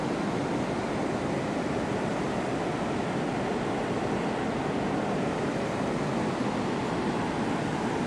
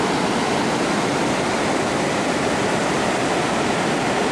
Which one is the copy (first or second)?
second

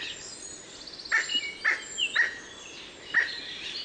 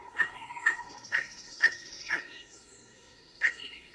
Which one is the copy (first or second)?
second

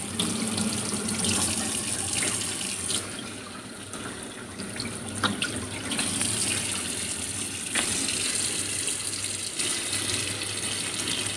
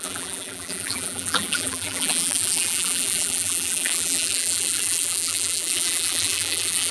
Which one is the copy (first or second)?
second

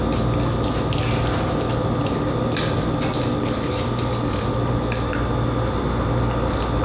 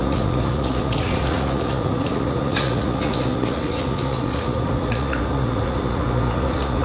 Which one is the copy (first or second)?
second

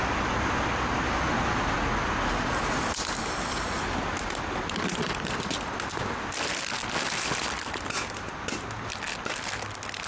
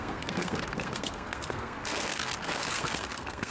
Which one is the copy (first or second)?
second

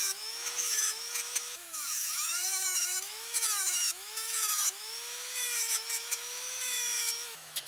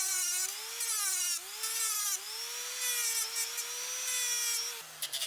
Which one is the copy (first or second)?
first